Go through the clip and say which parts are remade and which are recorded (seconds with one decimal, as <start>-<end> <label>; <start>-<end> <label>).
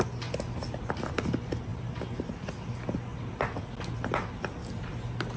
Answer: 0.0-1.7 recorded; 1.7-2.5 remade; 2.5-5.4 recorded